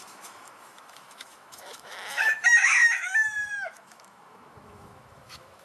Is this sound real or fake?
fake